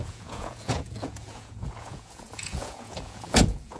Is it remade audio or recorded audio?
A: remade